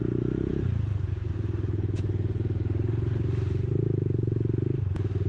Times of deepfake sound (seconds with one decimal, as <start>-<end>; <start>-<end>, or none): none